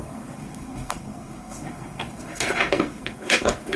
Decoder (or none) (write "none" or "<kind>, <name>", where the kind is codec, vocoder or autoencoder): codec, SNAC